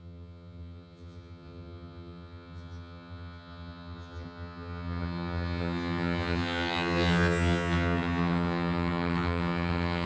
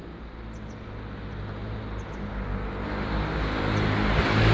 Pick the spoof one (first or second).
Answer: first